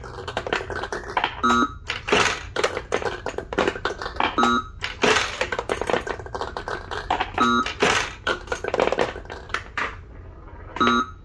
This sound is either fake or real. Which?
real